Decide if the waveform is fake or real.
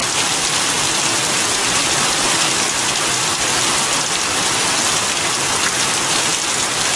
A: real